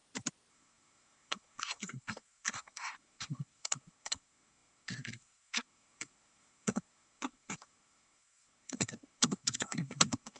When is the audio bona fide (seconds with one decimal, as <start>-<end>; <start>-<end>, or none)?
0.0-0.5